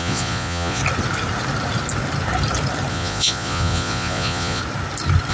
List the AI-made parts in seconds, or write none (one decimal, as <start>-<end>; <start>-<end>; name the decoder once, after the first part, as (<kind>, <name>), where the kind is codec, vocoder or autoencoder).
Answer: 0.0-0.8 (vocoder, Vocos); 2.9-4.6